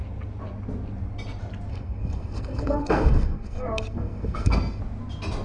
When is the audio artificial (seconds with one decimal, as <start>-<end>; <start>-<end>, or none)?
1.7-4.8